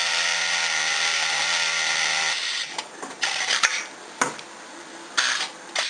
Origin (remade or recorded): recorded